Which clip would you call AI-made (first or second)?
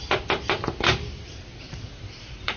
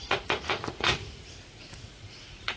second